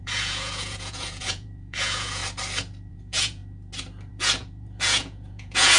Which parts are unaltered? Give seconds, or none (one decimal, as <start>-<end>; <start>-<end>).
2.2-2.9; 3.4-4.1